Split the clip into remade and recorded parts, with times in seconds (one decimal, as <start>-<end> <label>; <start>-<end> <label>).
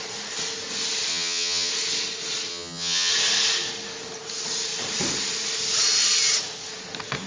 0.0-1.1 recorded; 1.1-1.7 remade; 1.7-2.5 recorded; 2.5-3.1 remade; 3.1-7.3 recorded